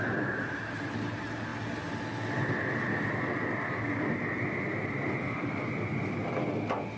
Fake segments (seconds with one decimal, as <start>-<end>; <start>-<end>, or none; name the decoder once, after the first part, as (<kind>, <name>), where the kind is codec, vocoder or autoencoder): none